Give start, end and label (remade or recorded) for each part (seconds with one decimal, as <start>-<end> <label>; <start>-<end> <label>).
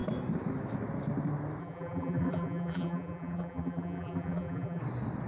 0.0-1.6 recorded; 1.6-4.8 remade; 4.8-5.3 recorded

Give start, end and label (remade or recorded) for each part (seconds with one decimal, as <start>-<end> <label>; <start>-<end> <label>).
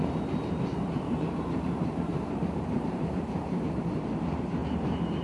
0.0-0.7 recorded; 0.7-3.8 remade; 3.8-5.2 recorded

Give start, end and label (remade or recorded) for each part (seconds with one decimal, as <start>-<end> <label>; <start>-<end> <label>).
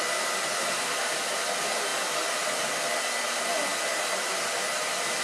0.0-5.2 recorded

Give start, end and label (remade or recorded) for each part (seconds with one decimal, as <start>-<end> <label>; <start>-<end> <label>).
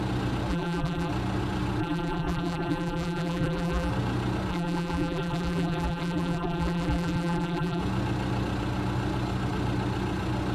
0.0-0.5 recorded; 0.5-1.1 remade; 1.1-1.8 recorded; 1.8-3.9 remade; 3.9-4.5 recorded; 4.5-7.8 remade; 7.8-10.5 recorded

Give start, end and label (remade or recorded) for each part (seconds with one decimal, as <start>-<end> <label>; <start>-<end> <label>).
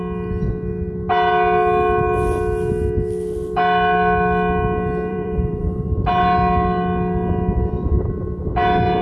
0.0-5.1 recorded; 5.1-5.9 remade; 5.9-9.0 recorded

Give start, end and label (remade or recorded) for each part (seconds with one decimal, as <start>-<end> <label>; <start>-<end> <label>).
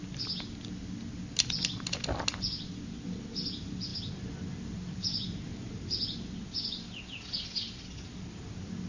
0.0-8.9 recorded